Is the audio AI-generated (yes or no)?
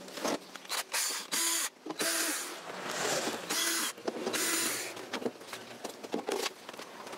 no